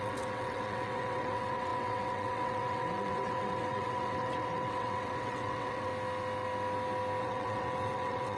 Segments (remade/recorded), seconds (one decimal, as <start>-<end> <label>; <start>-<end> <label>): 0.0-5.9 remade; 5.9-7.2 recorded; 7.2-8.4 remade